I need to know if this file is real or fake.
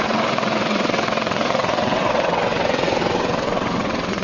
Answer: fake